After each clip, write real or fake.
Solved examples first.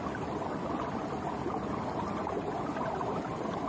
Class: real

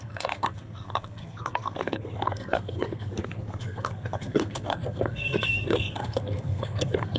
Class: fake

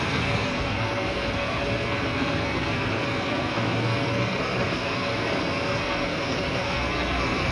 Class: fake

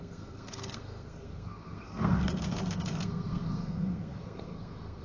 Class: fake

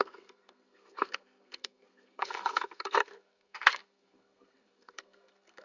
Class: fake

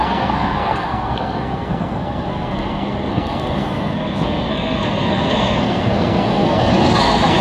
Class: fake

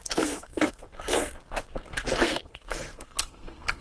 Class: fake